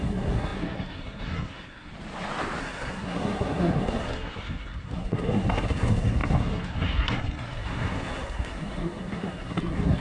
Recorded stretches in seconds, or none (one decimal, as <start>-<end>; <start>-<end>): 1.9-2.6